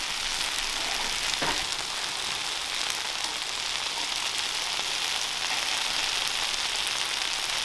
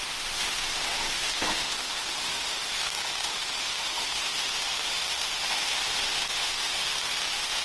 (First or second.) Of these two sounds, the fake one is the second